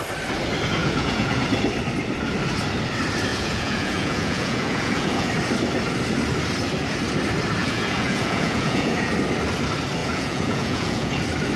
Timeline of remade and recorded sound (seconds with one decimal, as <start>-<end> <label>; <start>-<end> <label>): 0.0-0.8 recorded; 0.8-1.4 remade; 1.4-3.3 recorded; 3.3-5.3 remade; 5.3-7.6 recorded; 7.6-9.1 remade; 9.1-10.0 recorded; 10.0-11.2 remade; 11.2-11.6 recorded